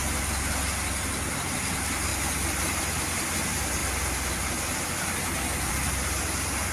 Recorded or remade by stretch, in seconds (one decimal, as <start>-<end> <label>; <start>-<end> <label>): 0.0-6.7 recorded